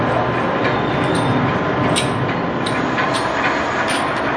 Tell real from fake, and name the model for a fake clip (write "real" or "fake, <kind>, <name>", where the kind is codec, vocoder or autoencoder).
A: real